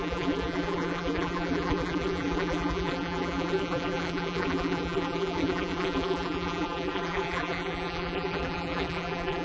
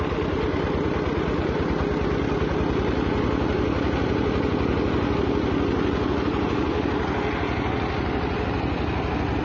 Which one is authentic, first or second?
second